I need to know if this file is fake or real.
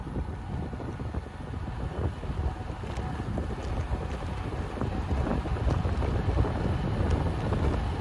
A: real